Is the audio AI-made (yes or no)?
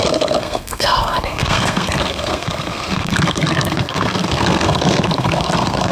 yes